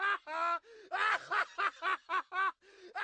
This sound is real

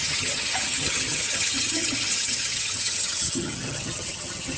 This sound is fake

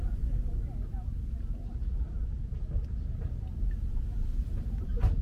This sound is real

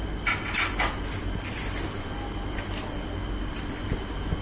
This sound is real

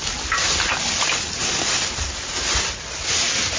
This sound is real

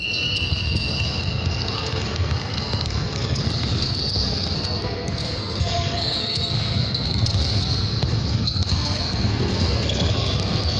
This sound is fake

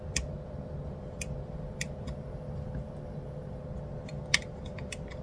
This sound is real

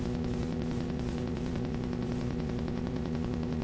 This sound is fake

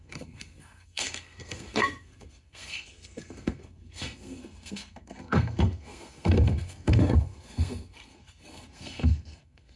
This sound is fake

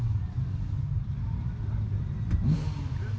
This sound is real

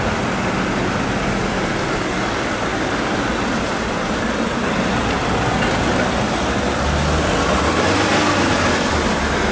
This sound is real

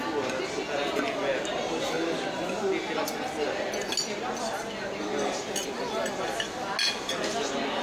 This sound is real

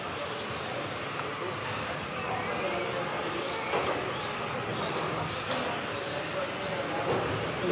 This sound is real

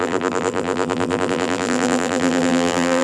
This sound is fake